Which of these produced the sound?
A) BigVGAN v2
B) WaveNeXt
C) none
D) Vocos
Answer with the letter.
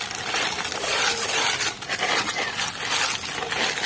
C